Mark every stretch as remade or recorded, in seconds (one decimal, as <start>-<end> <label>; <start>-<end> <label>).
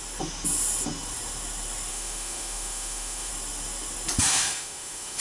0.0-1.9 recorded; 1.9-3.3 remade; 3.3-4.3 recorded; 4.3-5.2 remade